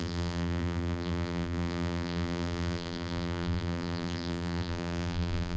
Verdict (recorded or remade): remade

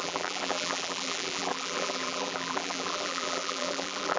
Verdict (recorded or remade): remade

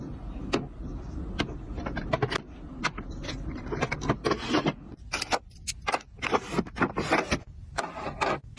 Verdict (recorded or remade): recorded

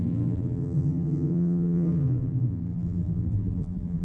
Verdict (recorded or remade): remade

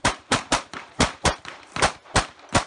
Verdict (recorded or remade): remade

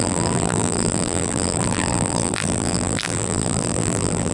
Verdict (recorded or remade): remade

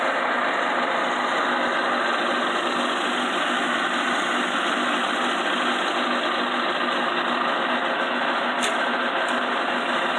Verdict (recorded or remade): recorded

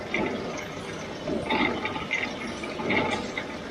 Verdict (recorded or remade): recorded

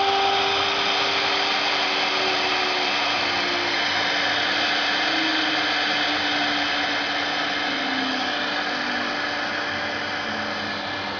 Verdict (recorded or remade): recorded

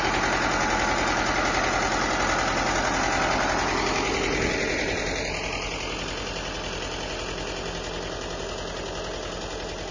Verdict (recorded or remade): recorded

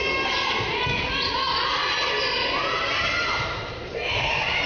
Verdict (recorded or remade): recorded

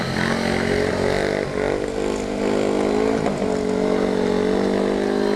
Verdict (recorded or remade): recorded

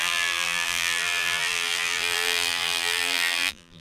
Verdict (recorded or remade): remade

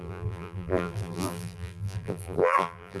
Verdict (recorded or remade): remade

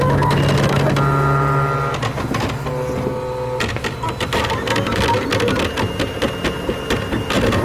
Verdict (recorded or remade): recorded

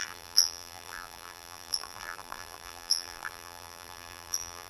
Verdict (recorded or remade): remade